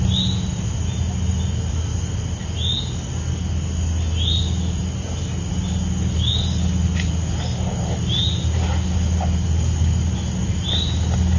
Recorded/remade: recorded